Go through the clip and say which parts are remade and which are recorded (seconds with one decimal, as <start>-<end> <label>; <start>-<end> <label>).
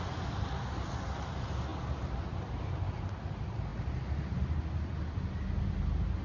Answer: 0.0-6.2 recorded